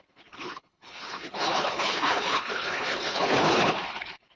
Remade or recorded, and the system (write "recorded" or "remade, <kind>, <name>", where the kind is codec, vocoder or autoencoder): remade, codec, HILCodec